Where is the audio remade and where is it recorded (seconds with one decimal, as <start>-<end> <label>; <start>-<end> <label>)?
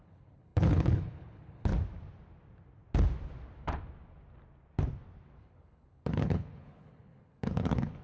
0.0-1.7 remade; 1.7-5.4 recorded; 5.4-8.0 remade